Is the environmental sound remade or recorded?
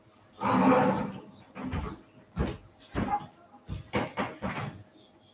recorded